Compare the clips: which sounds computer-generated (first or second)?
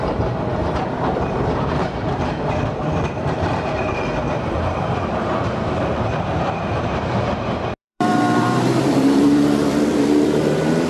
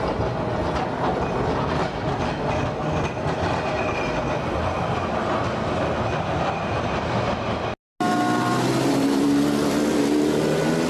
first